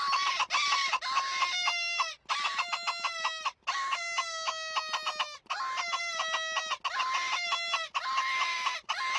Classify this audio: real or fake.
real